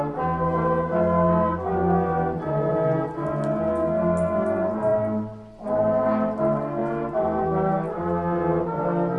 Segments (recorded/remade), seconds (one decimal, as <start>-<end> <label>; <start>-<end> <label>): 0.0-9.2 recorded